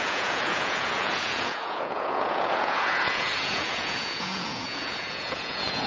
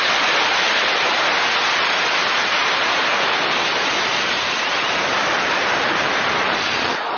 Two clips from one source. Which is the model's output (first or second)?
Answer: first